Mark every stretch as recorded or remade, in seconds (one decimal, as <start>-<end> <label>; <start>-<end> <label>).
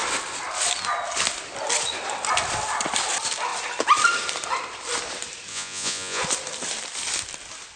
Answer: 0.0-5.5 recorded; 5.5-6.2 remade; 6.2-7.8 recorded